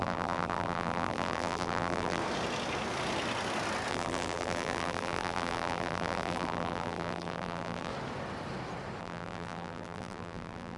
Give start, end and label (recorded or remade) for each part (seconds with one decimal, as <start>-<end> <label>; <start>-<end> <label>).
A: 0.0-2.2 remade; 2.2-3.9 recorded; 3.9-7.9 remade; 7.9-9.0 recorded; 9.0-10.8 remade